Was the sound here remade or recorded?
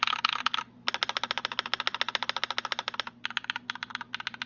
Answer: recorded